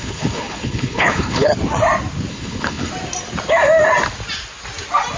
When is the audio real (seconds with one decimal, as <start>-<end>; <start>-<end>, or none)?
1.5-2.3; 2.9-5.2